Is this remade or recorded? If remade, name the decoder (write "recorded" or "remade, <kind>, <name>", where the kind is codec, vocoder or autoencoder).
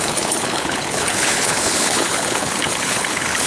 remade, codec, HILCodec